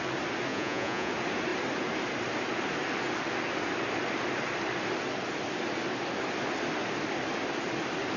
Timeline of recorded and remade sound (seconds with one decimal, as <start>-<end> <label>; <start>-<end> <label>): 0.0-0.5 recorded; 0.5-1.1 remade; 1.1-8.2 recorded